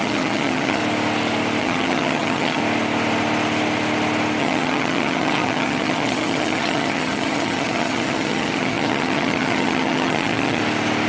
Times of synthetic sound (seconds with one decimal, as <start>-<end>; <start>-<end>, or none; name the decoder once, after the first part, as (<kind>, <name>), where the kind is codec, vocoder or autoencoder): 0.0-0.8 (vocoder, HiFi-GAN); 1.6-2.6; 4.4-10.6